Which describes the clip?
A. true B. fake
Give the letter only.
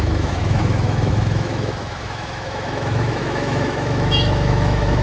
B